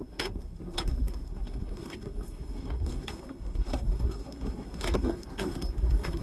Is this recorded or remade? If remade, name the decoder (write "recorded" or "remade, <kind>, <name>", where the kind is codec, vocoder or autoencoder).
remade, codec, SNAC